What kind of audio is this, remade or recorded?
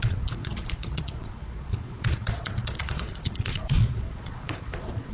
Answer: remade